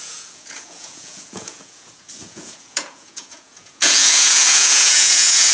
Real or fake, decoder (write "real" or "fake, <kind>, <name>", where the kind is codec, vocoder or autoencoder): fake, vocoder, Vocos